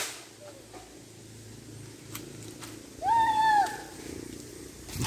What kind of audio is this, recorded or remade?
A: recorded